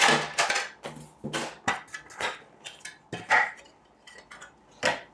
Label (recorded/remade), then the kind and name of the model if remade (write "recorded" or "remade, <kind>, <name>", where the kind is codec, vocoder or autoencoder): recorded